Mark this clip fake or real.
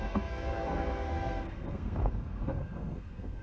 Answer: fake